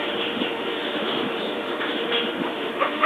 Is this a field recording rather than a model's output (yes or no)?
no